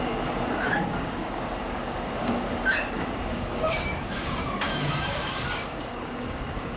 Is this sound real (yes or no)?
no